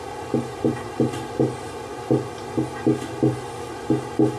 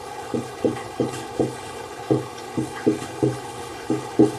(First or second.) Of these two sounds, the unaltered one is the first